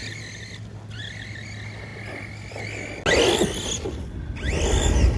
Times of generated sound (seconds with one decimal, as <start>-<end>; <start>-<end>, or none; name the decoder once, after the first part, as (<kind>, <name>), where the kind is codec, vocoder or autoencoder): none

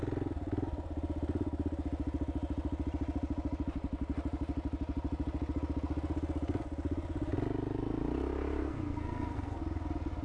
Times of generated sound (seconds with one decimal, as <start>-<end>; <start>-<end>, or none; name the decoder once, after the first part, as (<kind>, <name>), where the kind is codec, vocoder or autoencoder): 8.6-9.6 (codec, SNAC)

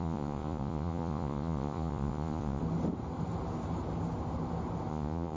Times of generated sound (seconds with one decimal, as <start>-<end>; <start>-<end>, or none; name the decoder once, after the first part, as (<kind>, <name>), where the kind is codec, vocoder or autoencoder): 0.0-2.6 (vocoder, Vocos); 4.9-5.4

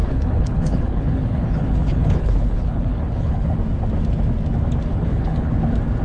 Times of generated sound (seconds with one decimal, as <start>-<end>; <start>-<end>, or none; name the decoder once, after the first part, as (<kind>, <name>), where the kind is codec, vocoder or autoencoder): 0.0-3.6 (codec, HILCodec); 4.9-5.5

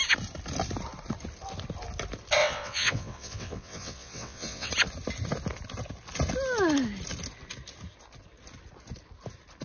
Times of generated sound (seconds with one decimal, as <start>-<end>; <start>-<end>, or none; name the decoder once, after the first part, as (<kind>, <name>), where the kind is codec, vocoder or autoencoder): 2.4-4.7 (vocoder, WaveNeXt)

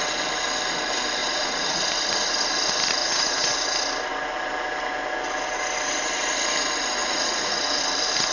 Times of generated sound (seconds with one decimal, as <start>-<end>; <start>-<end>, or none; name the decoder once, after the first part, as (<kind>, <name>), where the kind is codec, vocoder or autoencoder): 1.2-1.8 (vocoder, Vocos); 3.0-3.5; 7.0-7.8

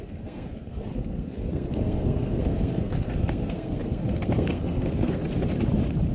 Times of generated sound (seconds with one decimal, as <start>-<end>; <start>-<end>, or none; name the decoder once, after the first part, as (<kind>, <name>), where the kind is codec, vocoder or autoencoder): 0.0-5.2 (codec, SNAC)

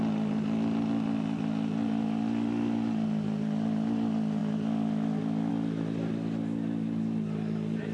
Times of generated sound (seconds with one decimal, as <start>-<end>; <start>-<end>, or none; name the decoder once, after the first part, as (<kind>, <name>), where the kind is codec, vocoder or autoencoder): 4.4-5.5 (vocoder, BigVGAN v2)